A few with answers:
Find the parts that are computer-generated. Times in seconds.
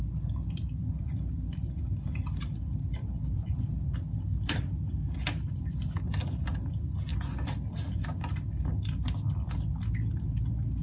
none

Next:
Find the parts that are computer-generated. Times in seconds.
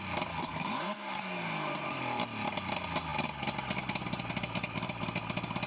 0.4-2.0 (codec, SNAC)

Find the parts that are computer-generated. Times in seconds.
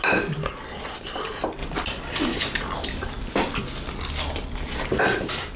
none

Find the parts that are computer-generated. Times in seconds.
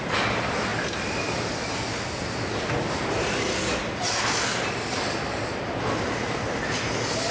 none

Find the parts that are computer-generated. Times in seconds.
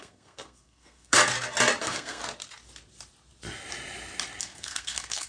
0.0-1.2 (codec, SNAC); 1.8-2.2; 4.4-5.3